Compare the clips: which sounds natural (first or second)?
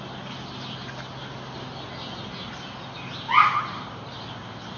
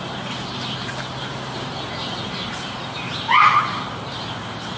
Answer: first